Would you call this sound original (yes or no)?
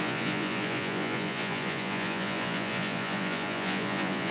no